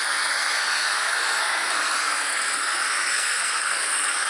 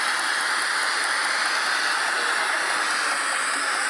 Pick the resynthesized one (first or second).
first